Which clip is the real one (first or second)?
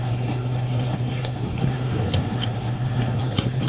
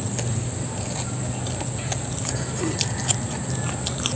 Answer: second